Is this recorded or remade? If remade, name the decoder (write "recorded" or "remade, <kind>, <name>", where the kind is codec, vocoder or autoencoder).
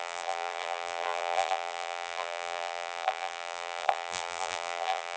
remade, vocoder, BigVGAN v2